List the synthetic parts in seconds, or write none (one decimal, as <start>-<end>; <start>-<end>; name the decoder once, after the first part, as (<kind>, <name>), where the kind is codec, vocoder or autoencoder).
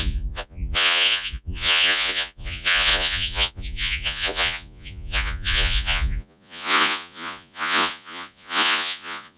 0.0-9.4 (vocoder, Vocos)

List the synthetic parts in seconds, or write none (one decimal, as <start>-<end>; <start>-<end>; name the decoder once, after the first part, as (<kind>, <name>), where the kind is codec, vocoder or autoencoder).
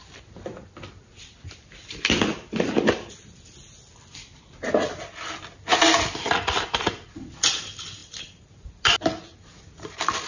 none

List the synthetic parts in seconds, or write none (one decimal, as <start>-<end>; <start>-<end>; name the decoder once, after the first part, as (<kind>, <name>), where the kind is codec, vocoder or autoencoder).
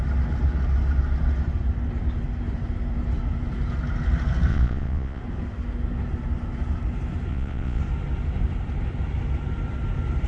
4.5-5.2 (vocoder, Vocos); 7.3-7.8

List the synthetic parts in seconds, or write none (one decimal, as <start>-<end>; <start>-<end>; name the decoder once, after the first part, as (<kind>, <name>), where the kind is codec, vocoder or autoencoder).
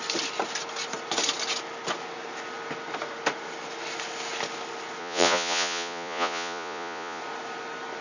5.0-7.2 (vocoder, Vocos)